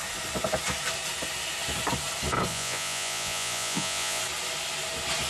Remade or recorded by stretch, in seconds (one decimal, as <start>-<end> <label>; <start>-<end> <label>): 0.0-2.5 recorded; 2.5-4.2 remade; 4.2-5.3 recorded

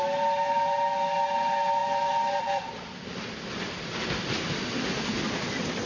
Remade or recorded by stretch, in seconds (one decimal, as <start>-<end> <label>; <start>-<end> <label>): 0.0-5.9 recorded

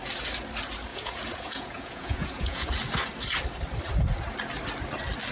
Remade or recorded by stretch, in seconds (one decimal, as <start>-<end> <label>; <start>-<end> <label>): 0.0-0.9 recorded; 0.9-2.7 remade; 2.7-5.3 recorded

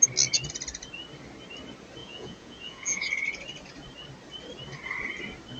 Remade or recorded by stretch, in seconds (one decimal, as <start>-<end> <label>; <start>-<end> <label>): 0.0-2.0 recorded; 2.0-3.1 remade; 3.1-5.6 recorded

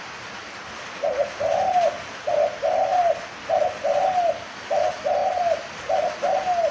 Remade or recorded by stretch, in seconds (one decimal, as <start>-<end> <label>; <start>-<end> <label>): 0.0-6.7 recorded